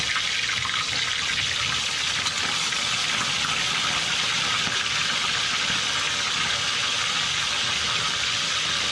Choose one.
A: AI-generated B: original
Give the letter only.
B